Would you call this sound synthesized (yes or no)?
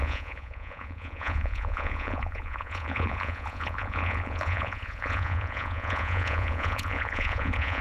yes